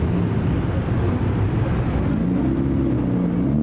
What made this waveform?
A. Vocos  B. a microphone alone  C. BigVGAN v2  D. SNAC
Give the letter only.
B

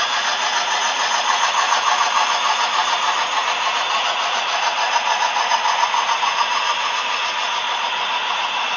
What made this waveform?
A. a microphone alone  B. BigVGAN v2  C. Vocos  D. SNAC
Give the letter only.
C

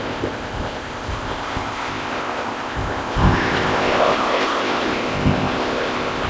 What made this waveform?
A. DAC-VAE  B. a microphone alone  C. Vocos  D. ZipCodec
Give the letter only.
D